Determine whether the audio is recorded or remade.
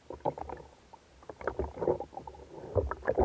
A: recorded